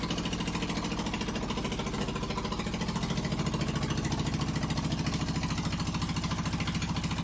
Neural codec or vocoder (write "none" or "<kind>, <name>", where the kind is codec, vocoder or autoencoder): none